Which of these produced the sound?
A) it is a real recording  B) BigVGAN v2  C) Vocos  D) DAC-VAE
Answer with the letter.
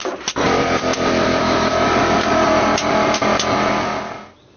A